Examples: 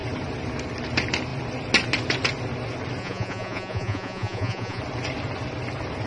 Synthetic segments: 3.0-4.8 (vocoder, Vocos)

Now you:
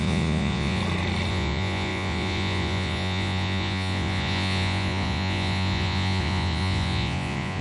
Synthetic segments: 0.0-0.8 (vocoder, Vocos); 1.3-7.6

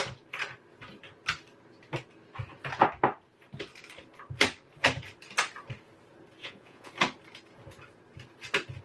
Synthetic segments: 6.4-6.9 (vocoder, Vocos)

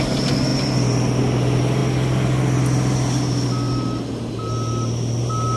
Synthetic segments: none